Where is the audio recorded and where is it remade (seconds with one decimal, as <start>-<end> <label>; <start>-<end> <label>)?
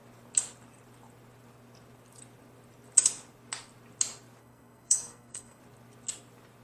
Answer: 0.0-4.4 recorded; 4.4-5.6 remade; 5.6-6.6 recorded